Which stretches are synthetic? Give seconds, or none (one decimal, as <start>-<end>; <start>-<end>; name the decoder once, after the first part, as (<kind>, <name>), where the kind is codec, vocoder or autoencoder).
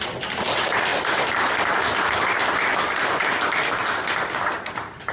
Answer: none